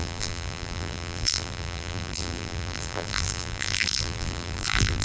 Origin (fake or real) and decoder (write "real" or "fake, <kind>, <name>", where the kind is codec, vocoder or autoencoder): fake, vocoder, BigVGAN v2